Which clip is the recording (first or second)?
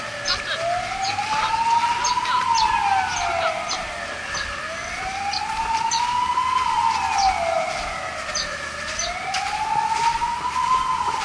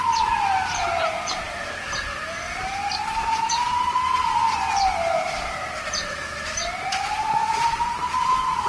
first